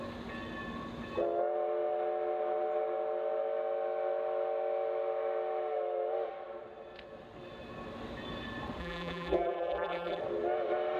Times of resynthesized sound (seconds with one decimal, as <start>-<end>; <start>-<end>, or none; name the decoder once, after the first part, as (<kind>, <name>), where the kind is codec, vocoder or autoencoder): 8.8-10.2 (vocoder, BigVGAN v2)